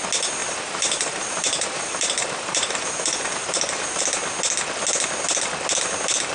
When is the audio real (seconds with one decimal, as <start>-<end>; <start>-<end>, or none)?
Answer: 0.0-0.4; 4.0-6.3